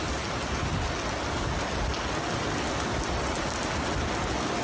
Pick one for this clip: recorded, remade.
recorded